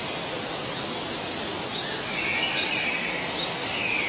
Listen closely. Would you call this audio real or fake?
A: real